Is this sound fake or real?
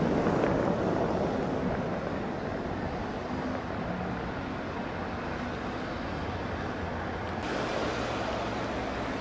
real